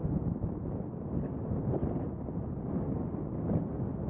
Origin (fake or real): real